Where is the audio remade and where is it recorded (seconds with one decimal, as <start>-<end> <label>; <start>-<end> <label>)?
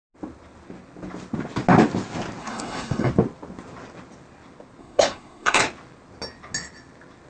0.0-2.4 recorded; 2.4-3.1 remade; 3.1-4.8 recorded; 4.8-5.6 remade; 5.6-7.3 recorded